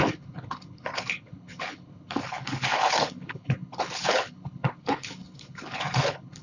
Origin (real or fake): fake